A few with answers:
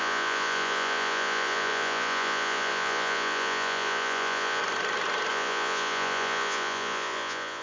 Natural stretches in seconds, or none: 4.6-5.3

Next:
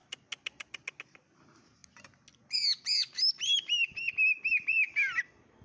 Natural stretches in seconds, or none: 0.0-5.6

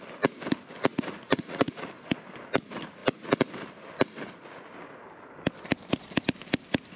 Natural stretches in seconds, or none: 0.0-0.9; 1.9-7.0